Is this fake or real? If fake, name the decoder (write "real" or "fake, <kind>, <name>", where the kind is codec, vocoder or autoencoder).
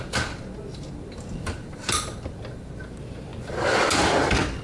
real